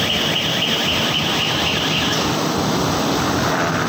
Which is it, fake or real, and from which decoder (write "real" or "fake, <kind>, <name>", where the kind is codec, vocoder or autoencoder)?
real